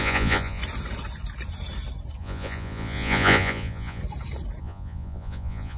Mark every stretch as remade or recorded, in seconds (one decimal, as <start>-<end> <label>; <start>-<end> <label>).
0.0-0.6 remade; 0.6-2.2 recorded; 2.2-4.0 remade; 4.0-4.6 recorded; 4.6-5.8 remade